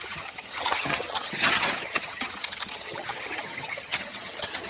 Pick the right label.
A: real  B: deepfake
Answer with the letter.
B